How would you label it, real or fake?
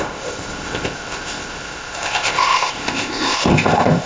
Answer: fake